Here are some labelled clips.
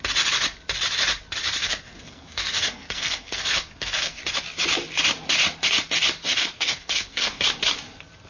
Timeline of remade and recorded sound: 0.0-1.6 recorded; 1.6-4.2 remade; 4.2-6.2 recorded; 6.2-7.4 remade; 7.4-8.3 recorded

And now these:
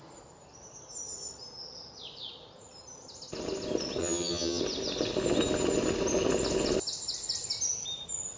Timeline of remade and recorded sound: 0.0-4.0 recorded; 4.0-4.6 remade; 4.6-8.4 recorded